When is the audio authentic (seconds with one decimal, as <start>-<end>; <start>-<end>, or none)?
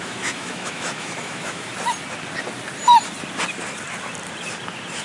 1.7-5.0